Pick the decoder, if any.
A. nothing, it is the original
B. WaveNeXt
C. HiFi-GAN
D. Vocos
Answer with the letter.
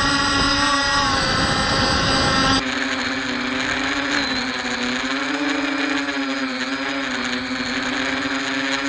A